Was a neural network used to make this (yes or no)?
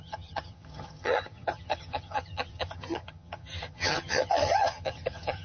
yes